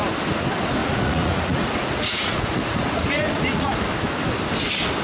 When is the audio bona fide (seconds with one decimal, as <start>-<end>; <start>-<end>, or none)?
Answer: 0.0-0.8; 3.8-5.0